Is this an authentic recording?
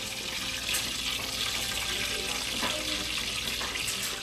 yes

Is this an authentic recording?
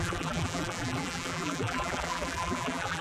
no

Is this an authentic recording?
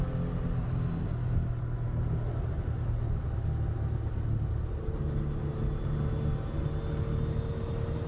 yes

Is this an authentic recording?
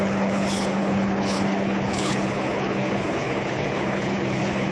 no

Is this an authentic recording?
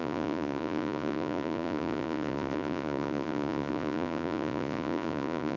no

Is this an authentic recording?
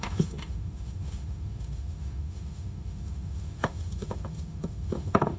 no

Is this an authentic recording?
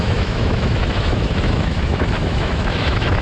no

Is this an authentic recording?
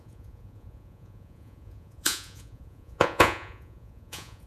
no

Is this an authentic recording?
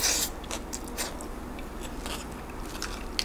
yes